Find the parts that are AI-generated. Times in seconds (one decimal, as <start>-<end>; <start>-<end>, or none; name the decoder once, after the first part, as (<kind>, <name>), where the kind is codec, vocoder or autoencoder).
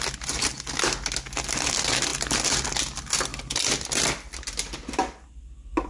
none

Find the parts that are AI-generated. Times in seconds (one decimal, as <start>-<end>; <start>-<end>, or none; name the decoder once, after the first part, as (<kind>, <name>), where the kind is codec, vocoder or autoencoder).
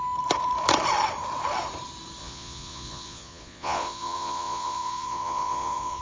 2.2-6.0 (vocoder, Vocos)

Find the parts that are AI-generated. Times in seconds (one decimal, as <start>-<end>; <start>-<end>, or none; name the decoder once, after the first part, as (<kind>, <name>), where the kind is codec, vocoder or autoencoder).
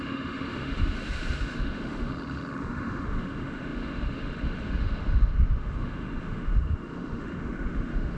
0.0-2.1 (autoencoder, DAC-VAE); 2.6-8.2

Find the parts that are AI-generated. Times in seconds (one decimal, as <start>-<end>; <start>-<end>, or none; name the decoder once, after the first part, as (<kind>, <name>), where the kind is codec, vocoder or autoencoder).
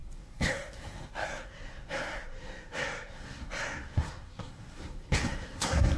0.0-6.0 (codec, SNAC)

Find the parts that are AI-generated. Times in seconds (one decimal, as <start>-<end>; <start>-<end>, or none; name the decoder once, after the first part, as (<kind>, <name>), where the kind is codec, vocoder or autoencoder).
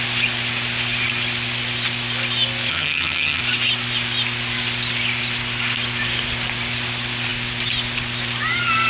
2.7-3.4 (vocoder, HiFi-GAN)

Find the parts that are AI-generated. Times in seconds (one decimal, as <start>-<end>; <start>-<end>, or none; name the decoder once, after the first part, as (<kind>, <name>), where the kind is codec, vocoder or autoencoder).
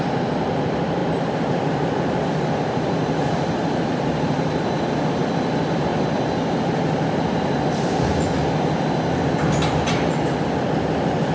none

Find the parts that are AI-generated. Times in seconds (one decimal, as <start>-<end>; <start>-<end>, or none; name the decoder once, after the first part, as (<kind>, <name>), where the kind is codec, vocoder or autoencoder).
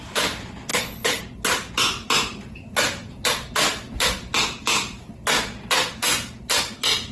0.7-1.2 (codec, HILCodec)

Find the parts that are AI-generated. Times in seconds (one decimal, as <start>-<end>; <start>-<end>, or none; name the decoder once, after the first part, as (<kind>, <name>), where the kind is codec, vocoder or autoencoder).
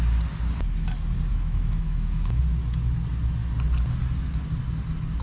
1.3-2.4 (autoencoder, DAC-VAE)